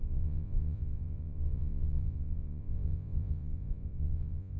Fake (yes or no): yes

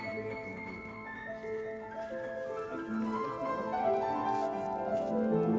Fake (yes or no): no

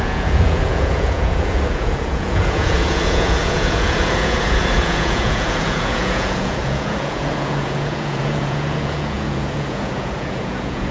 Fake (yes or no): yes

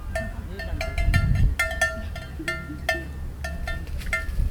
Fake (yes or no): no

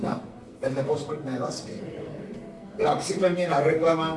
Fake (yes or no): yes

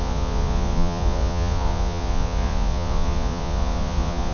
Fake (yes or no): yes